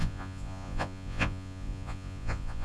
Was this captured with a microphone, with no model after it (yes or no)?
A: no